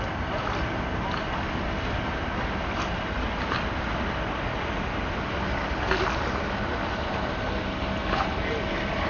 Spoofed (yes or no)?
no